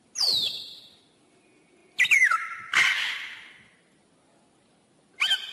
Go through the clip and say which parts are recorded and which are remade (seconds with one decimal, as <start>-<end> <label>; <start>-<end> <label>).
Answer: 0.0-5.5 recorded

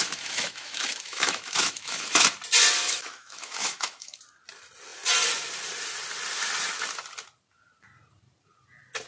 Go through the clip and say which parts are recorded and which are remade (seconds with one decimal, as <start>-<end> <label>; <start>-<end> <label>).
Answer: 0.0-2.2 remade; 2.2-2.8 recorded; 2.8-4.2 remade; 4.2-9.1 recorded

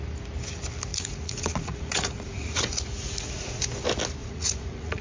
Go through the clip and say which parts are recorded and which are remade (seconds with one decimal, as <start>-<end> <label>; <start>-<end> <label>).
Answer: 0.0-0.9 recorded; 0.9-3.6 remade; 3.6-4.2 recorded; 4.2-5.0 remade

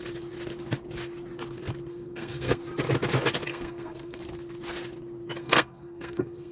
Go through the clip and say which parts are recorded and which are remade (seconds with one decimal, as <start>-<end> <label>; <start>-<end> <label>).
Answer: 0.0-1.9 recorded; 1.9-2.6 remade; 2.6-3.5 recorded; 3.5-4.2 remade; 4.2-5.4 recorded; 5.4-6.5 remade

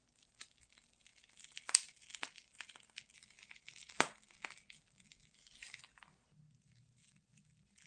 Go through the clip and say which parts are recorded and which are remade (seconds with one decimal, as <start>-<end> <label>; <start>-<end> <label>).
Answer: 0.0-7.9 recorded

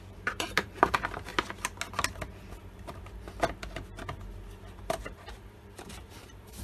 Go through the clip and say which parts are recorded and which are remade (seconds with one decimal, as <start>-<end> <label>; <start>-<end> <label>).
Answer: 0.0-1.3 remade; 1.3-4.8 recorded; 4.8-6.6 remade

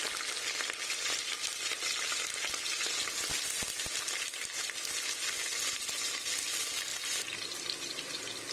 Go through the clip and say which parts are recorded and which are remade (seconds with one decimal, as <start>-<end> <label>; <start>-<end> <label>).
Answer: 0.0-6.9 recorded; 6.9-8.5 remade

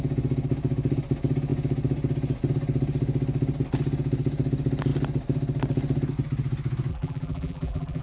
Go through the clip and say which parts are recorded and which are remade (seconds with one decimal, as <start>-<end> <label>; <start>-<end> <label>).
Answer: 0.0-6.9 recorded; 6.9-8.0 remade